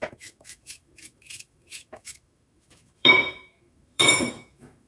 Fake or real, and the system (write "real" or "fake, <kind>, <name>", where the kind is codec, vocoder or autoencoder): fake, autoencoder, DAC-VAE